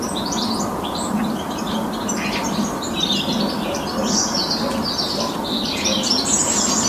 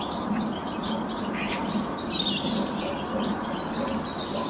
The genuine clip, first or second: first